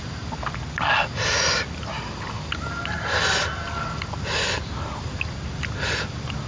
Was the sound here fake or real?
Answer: real